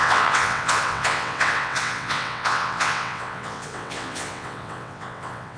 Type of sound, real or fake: fake